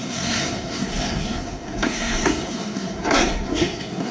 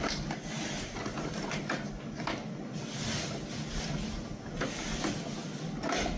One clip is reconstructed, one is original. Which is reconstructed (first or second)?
first